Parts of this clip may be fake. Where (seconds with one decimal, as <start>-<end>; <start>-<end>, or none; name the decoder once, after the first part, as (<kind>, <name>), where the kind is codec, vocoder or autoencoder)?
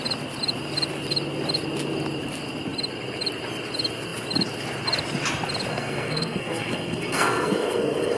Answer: 5.7-8.2 (codec, SNAC)